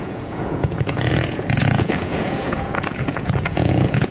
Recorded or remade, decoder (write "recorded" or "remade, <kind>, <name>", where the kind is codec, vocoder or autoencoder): remade, vocoder, Vocos